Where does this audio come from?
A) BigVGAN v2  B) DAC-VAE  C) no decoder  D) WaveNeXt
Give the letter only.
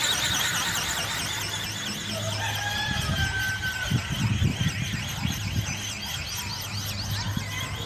C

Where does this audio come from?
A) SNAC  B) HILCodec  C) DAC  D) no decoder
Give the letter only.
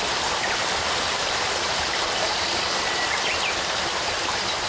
D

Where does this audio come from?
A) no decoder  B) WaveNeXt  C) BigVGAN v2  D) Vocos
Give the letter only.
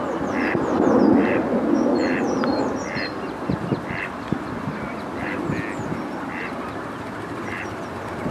A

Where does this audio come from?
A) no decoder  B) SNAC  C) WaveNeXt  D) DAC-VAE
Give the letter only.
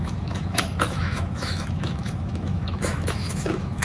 D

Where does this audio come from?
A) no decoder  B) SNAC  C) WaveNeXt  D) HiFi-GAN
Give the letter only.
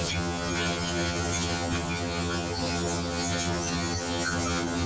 D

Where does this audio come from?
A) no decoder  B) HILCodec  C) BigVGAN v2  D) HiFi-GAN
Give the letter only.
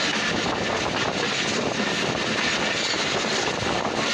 A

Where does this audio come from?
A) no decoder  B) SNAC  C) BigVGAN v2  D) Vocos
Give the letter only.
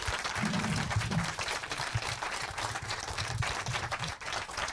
C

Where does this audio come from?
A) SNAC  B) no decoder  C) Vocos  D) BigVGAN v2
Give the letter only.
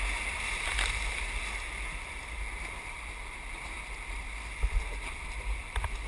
B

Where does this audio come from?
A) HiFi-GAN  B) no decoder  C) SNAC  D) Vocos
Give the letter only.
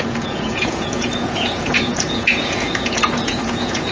D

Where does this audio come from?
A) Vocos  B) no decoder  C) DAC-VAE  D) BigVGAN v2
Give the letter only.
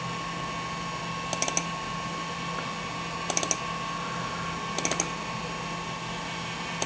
B